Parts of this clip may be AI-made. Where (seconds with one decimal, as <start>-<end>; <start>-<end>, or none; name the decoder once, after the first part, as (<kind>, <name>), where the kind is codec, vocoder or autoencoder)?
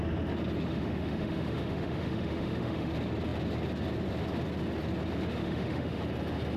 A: 0.7-2.9 (autoencoder, DAC-VAE); 5.4-6.0